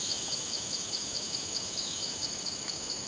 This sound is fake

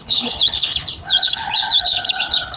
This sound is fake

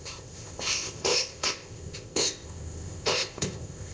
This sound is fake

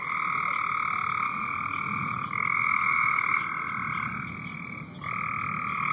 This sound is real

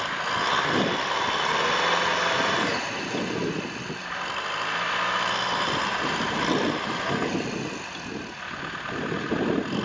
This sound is real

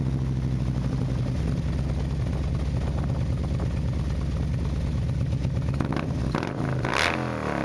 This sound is real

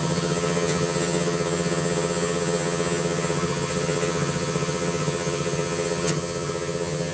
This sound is fake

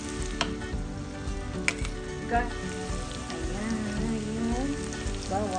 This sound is real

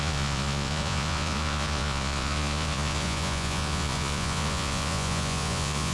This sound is fake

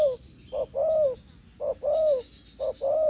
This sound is real